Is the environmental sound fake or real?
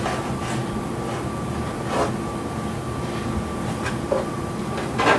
real